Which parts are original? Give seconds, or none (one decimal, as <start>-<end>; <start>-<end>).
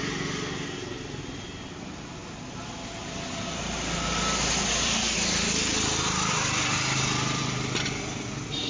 0.0-8.7